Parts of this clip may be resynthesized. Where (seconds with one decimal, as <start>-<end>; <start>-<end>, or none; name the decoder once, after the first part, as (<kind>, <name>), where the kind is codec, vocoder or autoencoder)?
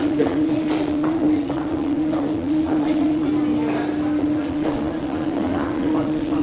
0.0-3.3 (vocoder, Vocos); 4.2-6.4